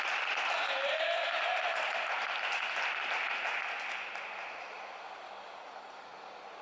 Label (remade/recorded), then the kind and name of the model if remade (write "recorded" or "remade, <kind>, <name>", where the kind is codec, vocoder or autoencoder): recorded